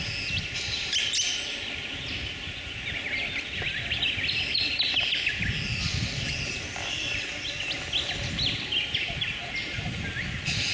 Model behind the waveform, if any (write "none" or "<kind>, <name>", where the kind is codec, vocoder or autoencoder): none